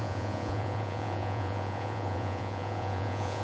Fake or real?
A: fake